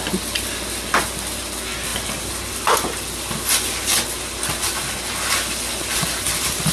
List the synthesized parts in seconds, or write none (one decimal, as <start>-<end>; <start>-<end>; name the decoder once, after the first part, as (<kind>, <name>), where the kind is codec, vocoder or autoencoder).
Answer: none